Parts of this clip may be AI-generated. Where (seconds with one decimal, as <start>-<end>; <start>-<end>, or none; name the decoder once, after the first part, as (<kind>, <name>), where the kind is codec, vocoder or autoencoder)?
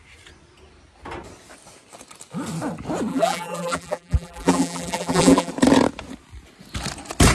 3.1-5.5 (vocoder, BigVGAN v2)